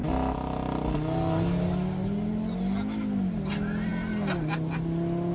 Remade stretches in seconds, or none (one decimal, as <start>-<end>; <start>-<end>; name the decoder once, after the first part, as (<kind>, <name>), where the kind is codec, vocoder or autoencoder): none